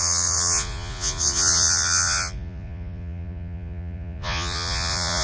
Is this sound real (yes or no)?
no